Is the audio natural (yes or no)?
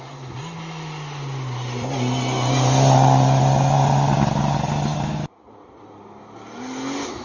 yes